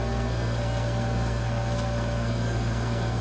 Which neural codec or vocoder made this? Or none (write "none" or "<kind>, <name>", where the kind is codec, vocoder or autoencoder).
codec, SNAC